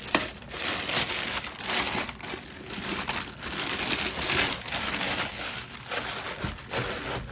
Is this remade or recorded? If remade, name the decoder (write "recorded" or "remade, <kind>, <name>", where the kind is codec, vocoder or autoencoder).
recorded